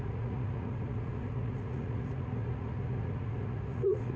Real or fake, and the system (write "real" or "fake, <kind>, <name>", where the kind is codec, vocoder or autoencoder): fake, vocoder, Vocos